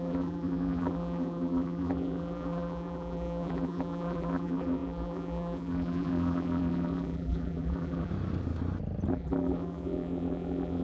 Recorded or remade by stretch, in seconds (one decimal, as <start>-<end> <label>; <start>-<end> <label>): 0.0-8.1 remade; 8.1-9.1 recorded; 9.1-10.8 remade